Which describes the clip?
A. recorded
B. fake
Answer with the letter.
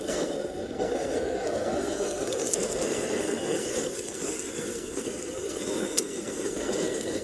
B